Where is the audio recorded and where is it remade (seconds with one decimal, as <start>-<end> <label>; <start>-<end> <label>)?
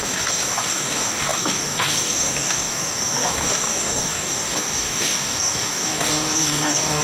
0.0-7.0 remade